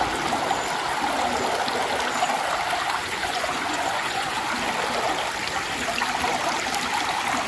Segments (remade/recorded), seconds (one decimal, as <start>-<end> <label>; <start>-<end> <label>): 0.0-3.0 recorded; 3.0-4.5 remade; 4.5-7.5 recorded